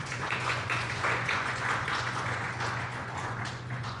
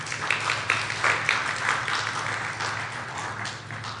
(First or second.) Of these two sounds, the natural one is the second